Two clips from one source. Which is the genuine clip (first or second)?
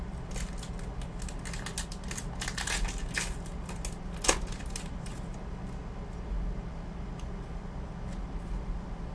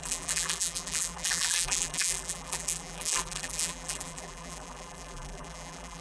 first